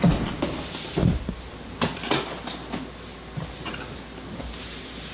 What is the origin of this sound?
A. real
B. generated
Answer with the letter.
A